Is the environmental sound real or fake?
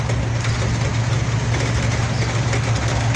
real